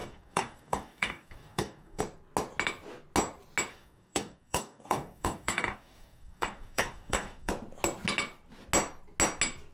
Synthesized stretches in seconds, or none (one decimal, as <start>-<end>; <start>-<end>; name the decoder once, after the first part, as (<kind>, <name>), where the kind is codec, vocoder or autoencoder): 0.0-2.0 (codec, DAC); 3.7-7.5